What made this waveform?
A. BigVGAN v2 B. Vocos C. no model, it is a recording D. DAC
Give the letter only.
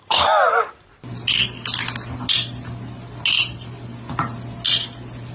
C